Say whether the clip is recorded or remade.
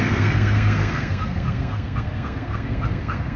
remade